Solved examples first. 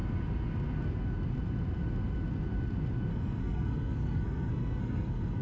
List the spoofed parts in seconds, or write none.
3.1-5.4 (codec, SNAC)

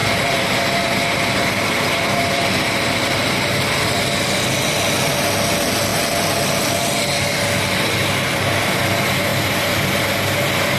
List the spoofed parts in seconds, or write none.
0.0-4.0 (vocoder, BigVGAN v2); 9.3-9.9

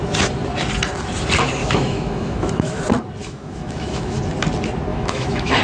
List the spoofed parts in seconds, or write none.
1.6-2.8 (autoencoder, DAC-VAE); 3.2-4.2; 4.9-5.6

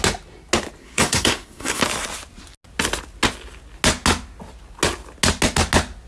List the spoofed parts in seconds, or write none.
0.8-1.8 (codec, SNAC)

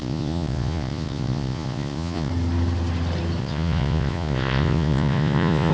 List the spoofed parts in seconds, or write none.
0.0-2.3 (vocoder, Vocos); 3.4-5.7